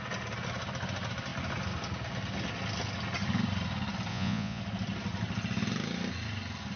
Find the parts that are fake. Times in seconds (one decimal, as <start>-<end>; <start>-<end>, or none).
4.1-4.6